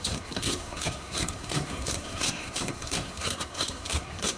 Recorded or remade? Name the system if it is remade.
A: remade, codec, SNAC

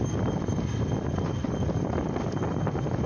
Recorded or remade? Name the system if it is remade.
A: recorded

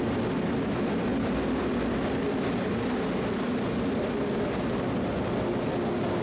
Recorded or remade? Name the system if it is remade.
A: recorded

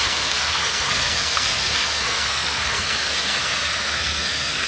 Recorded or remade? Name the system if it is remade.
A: remade, codec, SNAC